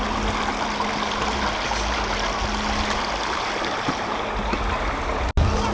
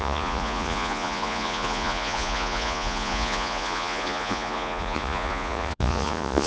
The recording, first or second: first